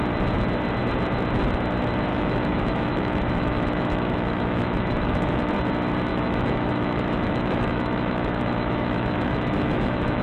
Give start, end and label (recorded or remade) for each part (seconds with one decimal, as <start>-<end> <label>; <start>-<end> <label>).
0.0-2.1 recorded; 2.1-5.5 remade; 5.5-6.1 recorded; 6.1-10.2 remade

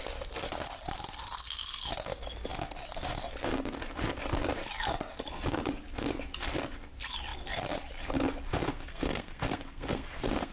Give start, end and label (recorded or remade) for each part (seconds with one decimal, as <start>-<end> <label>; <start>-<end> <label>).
0.0-8.5 recorded; 8.5-10.5 remade

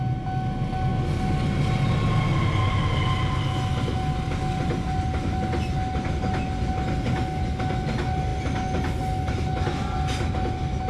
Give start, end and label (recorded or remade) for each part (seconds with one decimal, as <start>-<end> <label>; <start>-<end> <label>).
0.0-10.9 recorded

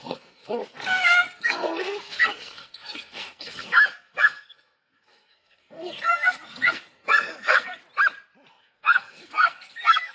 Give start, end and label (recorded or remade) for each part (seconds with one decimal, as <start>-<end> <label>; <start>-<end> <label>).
0.0-7.8 remade; 7.8-8.5 recorded; 8.5-10.1 remade

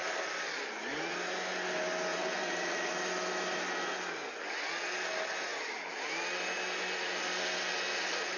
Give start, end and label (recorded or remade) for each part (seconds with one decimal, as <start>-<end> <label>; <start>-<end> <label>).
0.0-2.1 recorded; 2.1-2.9 remade; 2.9-8.4 recorded

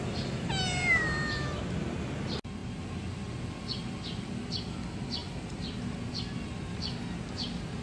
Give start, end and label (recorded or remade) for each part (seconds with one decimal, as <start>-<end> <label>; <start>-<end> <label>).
0.0-7.8 recorded